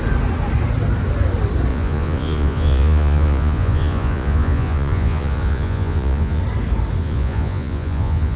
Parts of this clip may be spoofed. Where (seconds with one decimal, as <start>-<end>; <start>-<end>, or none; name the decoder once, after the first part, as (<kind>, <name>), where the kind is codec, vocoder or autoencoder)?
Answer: 1.7-6.4 (vocoder, Vocos); 7.0-8.4